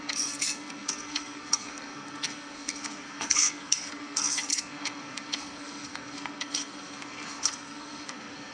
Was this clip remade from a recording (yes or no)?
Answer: yes